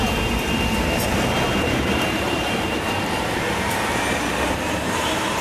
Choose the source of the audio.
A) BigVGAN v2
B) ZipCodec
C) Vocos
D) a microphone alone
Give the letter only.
A